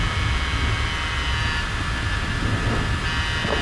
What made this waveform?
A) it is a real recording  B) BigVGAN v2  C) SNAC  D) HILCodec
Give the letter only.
A